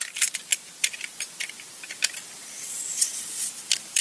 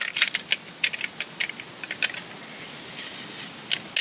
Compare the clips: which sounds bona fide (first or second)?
second